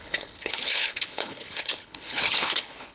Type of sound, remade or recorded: remade